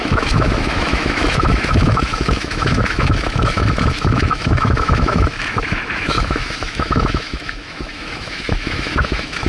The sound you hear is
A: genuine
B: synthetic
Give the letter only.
B